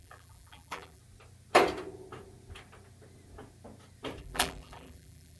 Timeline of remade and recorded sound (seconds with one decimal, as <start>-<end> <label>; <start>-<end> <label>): 0.0-1.0 remade; 1.0-4.2 recorded; 4.2-5.4 remade

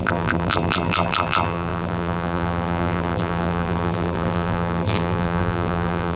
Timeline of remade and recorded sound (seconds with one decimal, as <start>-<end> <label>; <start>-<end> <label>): 0.0-6.2 remade

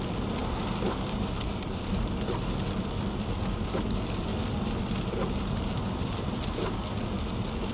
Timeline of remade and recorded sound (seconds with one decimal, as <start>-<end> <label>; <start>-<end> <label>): 0.0-0.4 recorded; 0.4-2.1 remade; 2.1-7.7 recorded

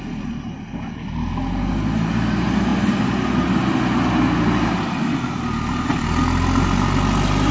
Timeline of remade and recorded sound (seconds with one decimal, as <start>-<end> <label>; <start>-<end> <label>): 0.0-7.5 recorded